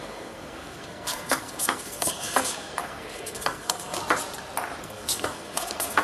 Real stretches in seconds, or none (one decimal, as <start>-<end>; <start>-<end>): 4.0-4.8